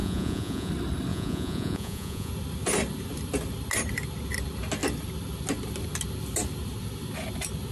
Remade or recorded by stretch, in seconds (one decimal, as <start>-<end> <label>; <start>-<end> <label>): 0.0-0.7 remade; 0.7-1.1 recorded; 1.1-2.3 remade; 2.3-7.7 recorded